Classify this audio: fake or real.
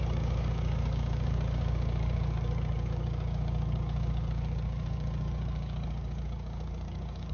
fake